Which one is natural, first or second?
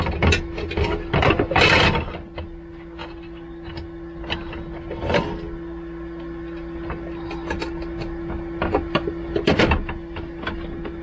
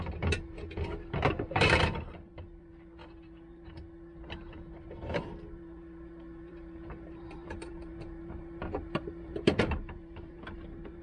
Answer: first